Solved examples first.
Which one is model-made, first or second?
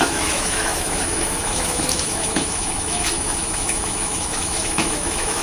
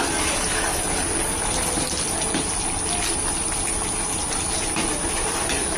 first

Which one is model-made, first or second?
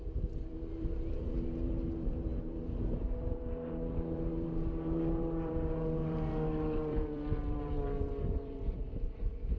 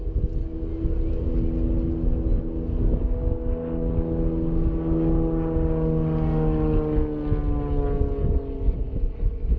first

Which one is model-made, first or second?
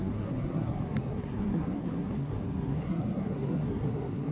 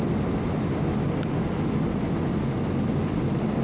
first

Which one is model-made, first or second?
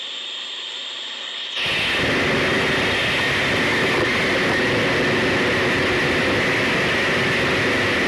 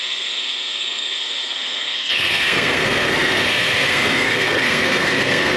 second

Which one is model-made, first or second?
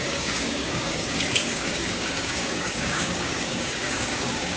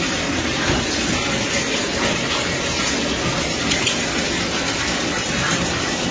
first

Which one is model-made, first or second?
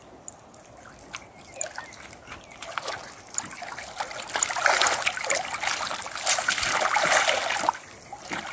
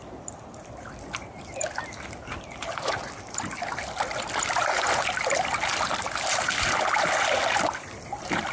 second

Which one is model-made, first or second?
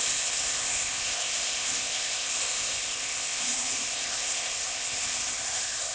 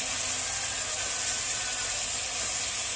first